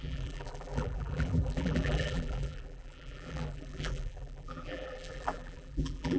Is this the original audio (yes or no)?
no